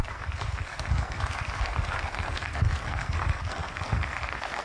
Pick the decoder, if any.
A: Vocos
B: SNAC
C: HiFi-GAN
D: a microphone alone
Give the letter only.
B